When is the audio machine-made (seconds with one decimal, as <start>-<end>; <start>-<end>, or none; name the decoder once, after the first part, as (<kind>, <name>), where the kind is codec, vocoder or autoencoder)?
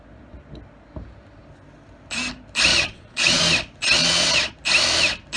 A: 2.7-3.4 (vocoder, Vocos); 4.0-4.5